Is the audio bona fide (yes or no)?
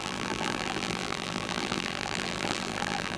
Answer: no